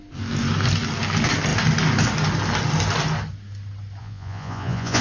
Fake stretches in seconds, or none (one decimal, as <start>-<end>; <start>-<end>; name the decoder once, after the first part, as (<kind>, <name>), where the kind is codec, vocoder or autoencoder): 4.0-5.0 (vocoder, Vocos)